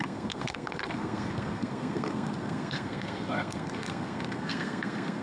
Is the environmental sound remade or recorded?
remade